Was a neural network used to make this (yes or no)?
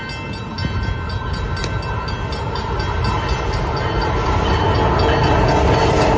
no